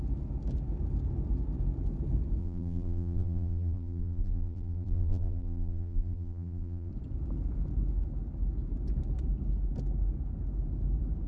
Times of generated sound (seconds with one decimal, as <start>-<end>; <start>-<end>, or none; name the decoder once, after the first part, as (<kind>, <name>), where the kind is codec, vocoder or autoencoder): 2.4-6.9 (vocoder, BigVGAN v2)